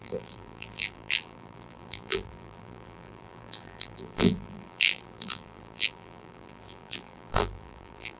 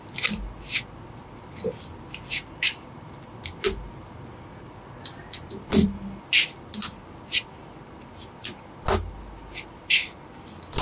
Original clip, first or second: second